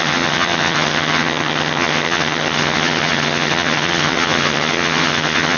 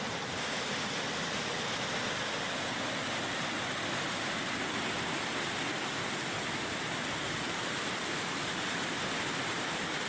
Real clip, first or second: second